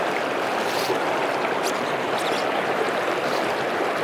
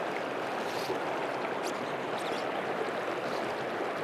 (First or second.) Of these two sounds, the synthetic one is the first